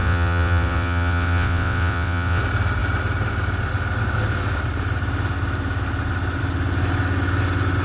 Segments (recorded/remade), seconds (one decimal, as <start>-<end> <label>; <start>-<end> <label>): 0.0-2.4 remade; 2.4-7.8 recorded